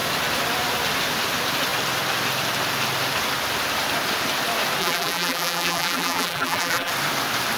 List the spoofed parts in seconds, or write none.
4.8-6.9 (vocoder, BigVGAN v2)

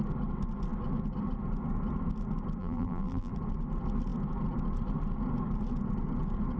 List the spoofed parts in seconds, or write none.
2.6-3.3 (vocoder, BigVGAN v2)

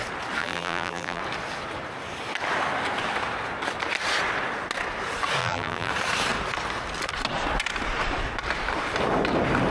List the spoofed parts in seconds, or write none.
0.4-1.2 (vocoder, BigVGAN v2); 5.4-5.9

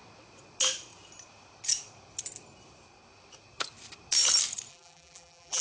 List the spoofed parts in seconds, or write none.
4.7-5.6 (vocoder, BigVGAN v2)

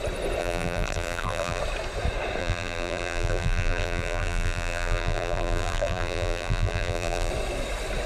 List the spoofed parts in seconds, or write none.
0.4-1.6 (vocoder, BigVGAN v2); 2.4-7.3

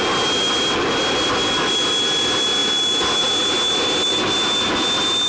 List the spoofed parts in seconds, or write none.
none